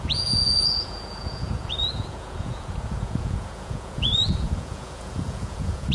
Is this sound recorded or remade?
remade